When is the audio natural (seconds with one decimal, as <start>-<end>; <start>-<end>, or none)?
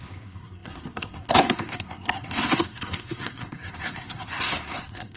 none